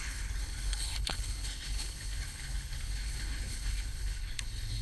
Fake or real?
fake